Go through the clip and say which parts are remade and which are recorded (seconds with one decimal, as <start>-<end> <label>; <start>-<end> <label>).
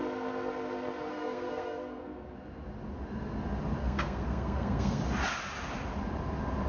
0.0-1.1 recorded; 1.1-2.0 remade; 2.0-3.8 recorded; 3.8-5.0 remade; 5.0-6.7 recorded